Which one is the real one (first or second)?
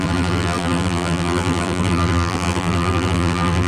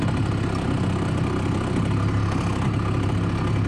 second